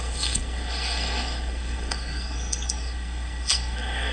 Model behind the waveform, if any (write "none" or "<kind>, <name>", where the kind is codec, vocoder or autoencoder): codec, SNAC